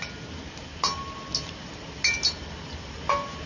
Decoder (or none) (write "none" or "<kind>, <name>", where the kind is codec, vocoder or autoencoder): none